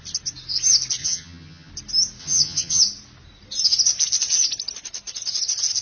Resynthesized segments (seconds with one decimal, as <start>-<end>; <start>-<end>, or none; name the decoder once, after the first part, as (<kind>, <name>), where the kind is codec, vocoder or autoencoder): 1.0-1.7 (vocoder, HiFi-GAN); 2.2-2.8